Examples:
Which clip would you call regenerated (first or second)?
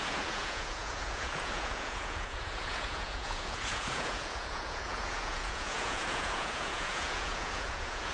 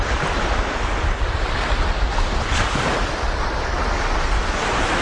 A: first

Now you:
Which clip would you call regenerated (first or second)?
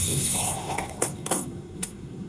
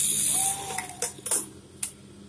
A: first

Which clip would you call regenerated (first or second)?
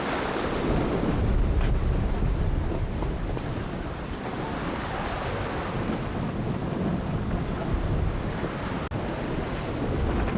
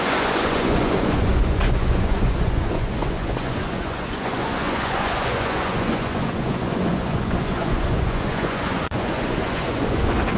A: second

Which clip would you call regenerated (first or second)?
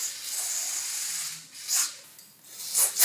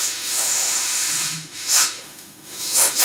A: second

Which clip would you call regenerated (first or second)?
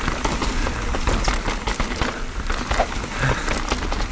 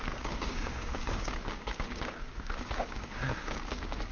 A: second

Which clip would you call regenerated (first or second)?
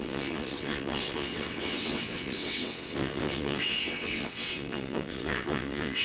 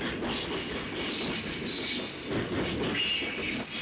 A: first